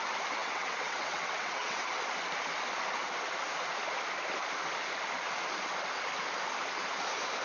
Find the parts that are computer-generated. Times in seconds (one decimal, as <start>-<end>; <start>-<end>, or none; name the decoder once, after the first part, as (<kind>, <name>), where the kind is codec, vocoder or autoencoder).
0.4-1.8 (vocoder, WaveNeXt)